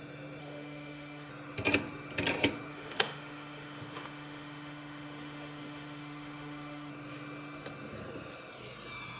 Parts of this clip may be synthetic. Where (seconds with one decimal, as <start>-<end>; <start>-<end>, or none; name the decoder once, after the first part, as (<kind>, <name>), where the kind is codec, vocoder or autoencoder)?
0.4-1.3 (autoencoder, DAC-VAE); 2.7-6.9